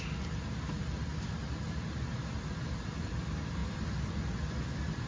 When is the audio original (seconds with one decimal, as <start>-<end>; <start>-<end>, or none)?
0.0-5.1